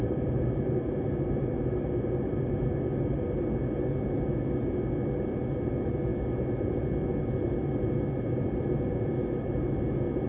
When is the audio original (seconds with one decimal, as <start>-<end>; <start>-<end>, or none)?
0.0-10.3